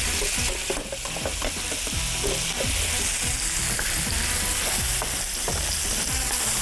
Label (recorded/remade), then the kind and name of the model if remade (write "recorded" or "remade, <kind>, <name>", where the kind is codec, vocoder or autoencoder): recorded